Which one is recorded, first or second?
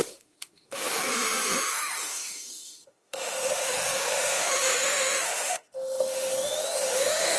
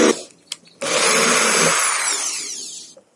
second